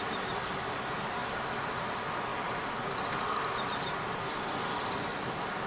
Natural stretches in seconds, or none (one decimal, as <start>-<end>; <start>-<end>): 0.0-5.7